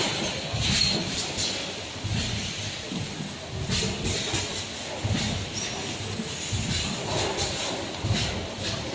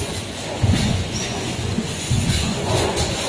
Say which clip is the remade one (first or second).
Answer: second